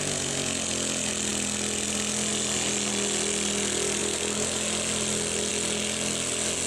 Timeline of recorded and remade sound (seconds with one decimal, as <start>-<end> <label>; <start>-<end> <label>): 0.0-6.7 recorded